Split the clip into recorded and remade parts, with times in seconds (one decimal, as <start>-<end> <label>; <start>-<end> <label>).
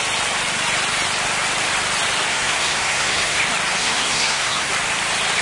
0.0-2.3 recorded; 2.3-3.4 remade; 3.4-3.8 recorded; 3.8-4.7 remade; 4.7-5.4 recorded